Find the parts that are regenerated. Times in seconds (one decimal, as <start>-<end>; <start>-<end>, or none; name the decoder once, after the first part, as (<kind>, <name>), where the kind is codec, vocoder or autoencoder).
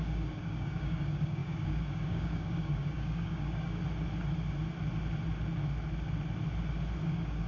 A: 0.0-3.8 (codec, DAC); 7.0-7.5